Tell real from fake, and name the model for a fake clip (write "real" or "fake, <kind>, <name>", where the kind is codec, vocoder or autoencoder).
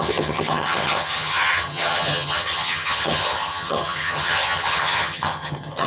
fake, vocoder, HiFi-GAN